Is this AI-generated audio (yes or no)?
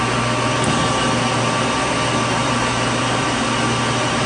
no